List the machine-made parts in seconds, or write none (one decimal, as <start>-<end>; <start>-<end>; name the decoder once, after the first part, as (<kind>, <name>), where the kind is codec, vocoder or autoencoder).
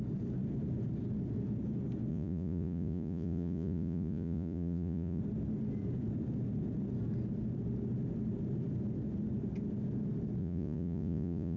2.1-5.2 (vocoder, Vocos); 10.4-11.6